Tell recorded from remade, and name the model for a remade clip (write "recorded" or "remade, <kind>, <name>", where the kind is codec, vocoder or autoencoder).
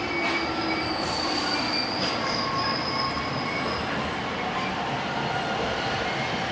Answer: recorded